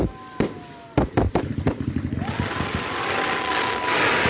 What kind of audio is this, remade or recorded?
recorded